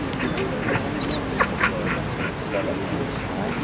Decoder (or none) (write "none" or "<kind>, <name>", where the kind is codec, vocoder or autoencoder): none